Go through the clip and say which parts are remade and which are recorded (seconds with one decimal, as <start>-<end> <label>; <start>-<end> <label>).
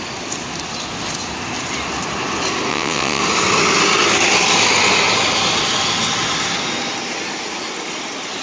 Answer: 0.0-2.7 recorded; 2.7-3.2 remade; 3.2-8.4 recorded